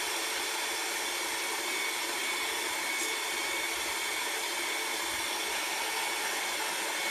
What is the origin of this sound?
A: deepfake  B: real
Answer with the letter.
B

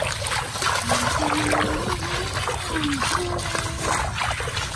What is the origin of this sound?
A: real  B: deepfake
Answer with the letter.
A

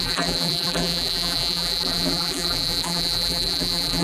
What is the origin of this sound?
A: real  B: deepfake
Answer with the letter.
B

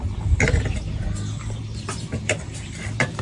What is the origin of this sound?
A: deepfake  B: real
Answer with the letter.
B